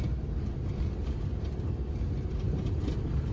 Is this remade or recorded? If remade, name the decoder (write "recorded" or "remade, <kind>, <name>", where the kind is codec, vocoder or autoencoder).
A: recorded